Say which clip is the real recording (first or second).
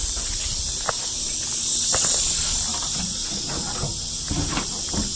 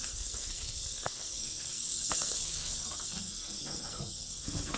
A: first